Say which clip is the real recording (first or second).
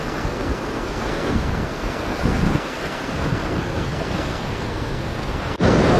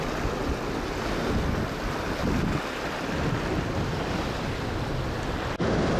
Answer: second